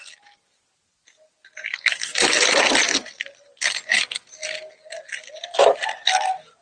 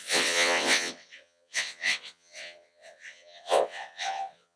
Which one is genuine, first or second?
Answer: first